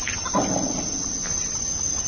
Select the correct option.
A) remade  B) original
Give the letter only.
B